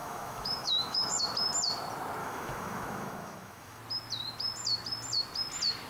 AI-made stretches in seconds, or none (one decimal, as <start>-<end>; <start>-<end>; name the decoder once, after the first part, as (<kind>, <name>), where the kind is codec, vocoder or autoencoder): 0.0-1.2 (autoencoder, DAC-VAE); 2.2-3.8

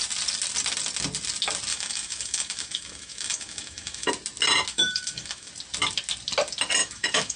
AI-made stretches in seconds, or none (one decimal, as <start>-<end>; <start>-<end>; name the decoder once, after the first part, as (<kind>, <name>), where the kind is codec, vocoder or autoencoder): 1.7-4.1 (autoencoder, DAC-VAE); 4.7-5.5; 6.8-7.4

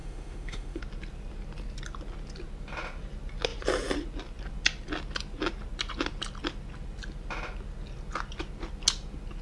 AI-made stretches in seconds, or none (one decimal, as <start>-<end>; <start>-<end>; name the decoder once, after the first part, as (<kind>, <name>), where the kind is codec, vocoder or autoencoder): 0.0-0.8 (autoencoder, DAC-VAE)

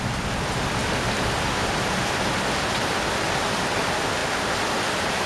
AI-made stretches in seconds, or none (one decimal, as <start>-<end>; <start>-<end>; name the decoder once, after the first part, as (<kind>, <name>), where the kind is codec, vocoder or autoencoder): none

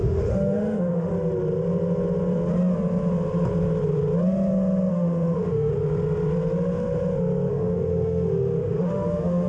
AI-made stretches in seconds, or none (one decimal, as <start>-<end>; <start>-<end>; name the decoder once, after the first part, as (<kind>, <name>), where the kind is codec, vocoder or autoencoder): 0.0-1.1 (autoencoder, DAC-VAE); 4.9-5.7; 7.5-9.5

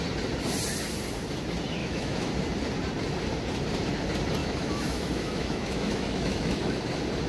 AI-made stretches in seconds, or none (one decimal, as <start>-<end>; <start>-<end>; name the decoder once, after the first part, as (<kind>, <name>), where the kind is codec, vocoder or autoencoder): 1.8-2.3 (autoencoder, DAC-VAE); 4.4-6.8

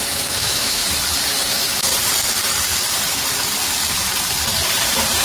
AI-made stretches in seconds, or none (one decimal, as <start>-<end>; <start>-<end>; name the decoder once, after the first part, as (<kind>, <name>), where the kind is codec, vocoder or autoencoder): 0.0-0.8 (autoencoder, DAC-VAE); 1.5-1.9

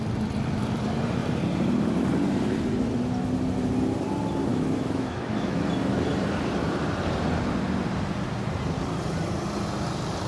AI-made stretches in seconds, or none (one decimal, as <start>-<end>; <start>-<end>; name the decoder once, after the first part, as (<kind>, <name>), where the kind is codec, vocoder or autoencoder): 4.5-5.6 (autoencoder, DAC-VAE)